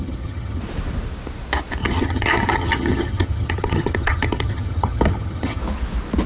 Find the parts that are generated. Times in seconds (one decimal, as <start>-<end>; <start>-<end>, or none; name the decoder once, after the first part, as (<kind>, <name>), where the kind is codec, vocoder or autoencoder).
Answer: 0.0-0.6 (vocoder, HiFi-GAN); 1.8-5.6